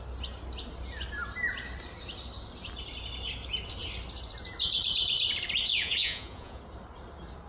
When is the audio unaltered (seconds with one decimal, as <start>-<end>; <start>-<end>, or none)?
0.0-5.7; 6.6-7.5